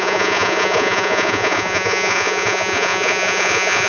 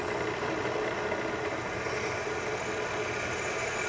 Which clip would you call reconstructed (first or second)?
first